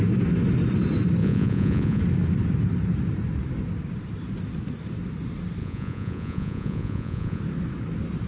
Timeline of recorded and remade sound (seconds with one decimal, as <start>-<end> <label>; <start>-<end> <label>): 0.0-1.2 recorded; 1.2-2.0 remade; 2.0-5.6 recorded; 5.6-7.4 remade; 7.4-8.3 recorded